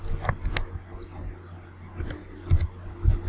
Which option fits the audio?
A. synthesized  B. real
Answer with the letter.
B